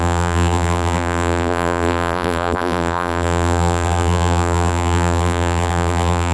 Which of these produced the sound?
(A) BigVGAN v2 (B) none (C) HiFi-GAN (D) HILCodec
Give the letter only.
A